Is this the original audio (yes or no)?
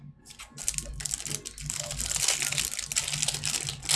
yes